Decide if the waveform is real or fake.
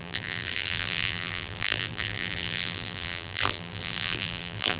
fake